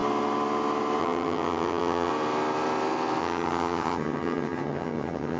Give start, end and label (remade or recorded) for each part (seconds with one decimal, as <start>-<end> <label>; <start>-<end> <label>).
0.0-1.0 recorded; 1.0-2.1 remade; 2.1-3.2 recorded; 3.2-5.4 remade